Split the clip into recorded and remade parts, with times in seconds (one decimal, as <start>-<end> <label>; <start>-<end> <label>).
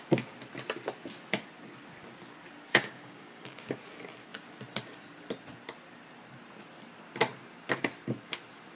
0.0-2.7 recorded; 2.7-3.7 remade; 3.7-8.8 recorded